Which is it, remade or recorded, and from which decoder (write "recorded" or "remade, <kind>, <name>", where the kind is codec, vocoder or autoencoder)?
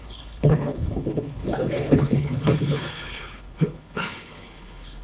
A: remade, codec, HILCodec